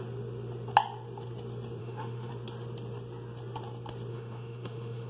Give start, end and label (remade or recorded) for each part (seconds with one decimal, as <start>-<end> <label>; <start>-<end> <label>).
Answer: 0.0-1.8 recorded; 1.8-2.3 remade; 2.3-4.1 recorded; 4.1-5.1 remade